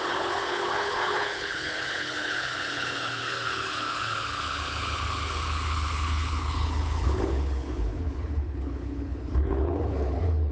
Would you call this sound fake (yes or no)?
yes